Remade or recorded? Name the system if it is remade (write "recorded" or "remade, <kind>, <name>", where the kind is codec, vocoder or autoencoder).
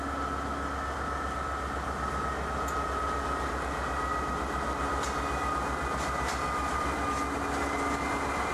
recorded